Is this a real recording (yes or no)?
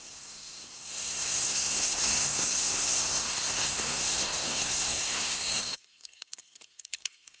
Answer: no